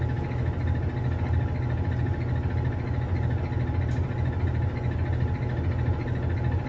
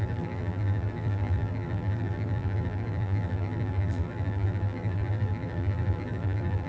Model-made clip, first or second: second